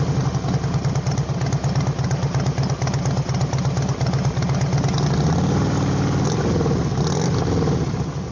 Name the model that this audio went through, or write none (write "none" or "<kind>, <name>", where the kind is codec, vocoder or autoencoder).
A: none